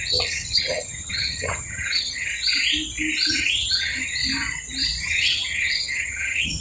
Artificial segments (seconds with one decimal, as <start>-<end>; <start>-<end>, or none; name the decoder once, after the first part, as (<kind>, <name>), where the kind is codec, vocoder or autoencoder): 0.0-2.3 (vocoder, HiFi-GAN); 3.3-4.2; 5.0-6.6